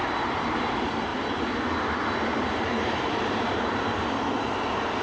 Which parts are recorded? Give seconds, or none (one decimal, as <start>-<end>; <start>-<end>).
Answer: 1.1-2.5